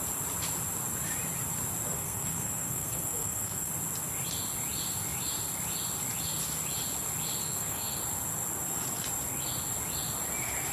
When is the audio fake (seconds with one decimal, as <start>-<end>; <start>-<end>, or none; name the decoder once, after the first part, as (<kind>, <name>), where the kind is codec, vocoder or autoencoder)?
1.9-3.7 (codec, SNAC); 7.4-8.0